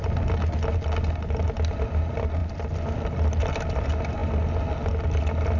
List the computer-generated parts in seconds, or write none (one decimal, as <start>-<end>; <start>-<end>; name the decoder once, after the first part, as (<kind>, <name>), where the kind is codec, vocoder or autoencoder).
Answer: none